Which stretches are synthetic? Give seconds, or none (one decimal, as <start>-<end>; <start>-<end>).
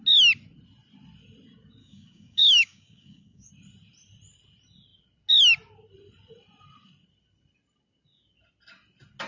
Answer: 1.8-3.5